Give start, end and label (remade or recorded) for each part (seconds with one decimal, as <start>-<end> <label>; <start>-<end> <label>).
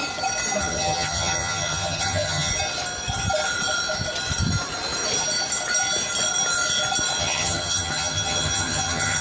0.0-0.6 recorded; 0.6-2.5 remade; 2.5-7.2 recorded; 7.2-9.2 remade